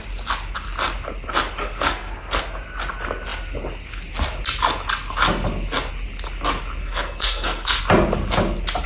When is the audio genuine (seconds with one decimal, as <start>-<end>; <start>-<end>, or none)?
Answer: 0.0-1.6; 2.4-6.8; 7.8-8.9